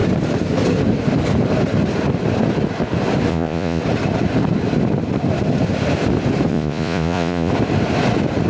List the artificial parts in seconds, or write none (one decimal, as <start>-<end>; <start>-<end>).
3.3-3.8; 6.5-7.5